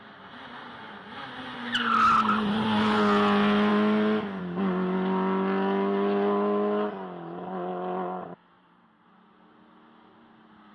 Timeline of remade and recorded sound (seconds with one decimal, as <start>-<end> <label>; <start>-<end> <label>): 0.0-10.7 recorded